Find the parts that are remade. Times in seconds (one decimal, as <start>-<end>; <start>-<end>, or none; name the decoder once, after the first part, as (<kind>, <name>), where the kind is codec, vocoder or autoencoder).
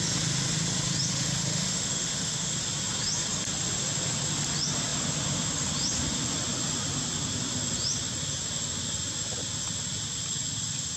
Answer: 1.1-2.5 (autoencoder, DAC-VAE)